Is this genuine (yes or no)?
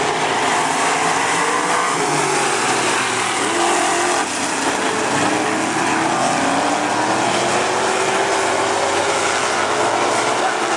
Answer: yes